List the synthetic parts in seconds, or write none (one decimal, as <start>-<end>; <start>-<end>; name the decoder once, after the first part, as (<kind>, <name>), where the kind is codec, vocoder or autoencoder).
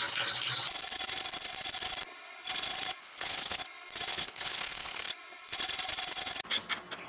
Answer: 3.0-3.6 (codec, HILCodec); 4.1-5.1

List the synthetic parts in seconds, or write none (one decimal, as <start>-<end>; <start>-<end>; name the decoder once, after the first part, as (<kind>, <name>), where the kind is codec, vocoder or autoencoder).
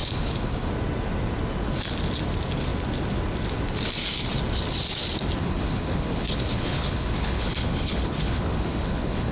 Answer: 0.0-0.7 (codec, HILCodec); 5.4-9.3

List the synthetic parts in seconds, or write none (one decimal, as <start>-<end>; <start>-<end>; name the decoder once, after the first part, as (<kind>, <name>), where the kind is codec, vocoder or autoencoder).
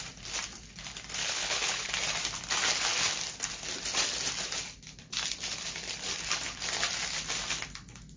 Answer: 1.2-1.9 (codec, HILCodec)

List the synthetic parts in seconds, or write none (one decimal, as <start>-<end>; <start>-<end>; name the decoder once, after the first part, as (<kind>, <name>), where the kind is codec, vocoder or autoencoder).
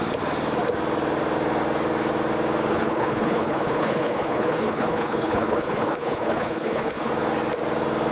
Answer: 2.7-7.1 (codec, HILCodec)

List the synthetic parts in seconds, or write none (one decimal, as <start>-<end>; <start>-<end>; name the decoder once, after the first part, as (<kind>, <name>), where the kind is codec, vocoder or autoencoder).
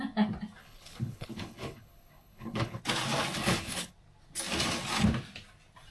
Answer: 0.6-2.8 (codec, HILCodec); 3.4-3.9